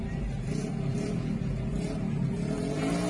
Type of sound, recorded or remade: recorded